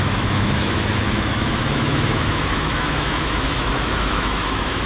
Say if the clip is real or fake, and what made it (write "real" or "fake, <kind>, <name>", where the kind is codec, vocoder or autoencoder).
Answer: fake, autoencoder, DAC-VAE